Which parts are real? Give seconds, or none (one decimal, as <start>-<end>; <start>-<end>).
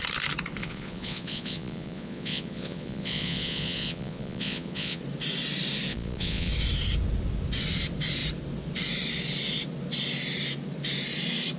0.0-0.6; 5.0-5.9; 6.5-11.6